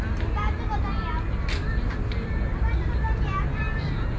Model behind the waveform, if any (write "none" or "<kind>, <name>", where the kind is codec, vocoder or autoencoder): none